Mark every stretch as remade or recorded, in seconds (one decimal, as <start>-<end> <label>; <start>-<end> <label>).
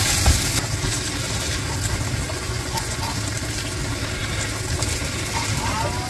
0.0-2.3 recorded; 2.3-3.0 remade; 3.0-6.1 recorded